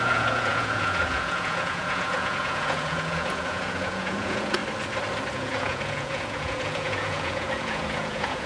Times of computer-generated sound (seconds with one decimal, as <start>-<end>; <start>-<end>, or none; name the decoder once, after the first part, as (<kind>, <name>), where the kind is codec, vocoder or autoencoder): 0.0-4.6 (vocoder, Vocos); 5.3-8.5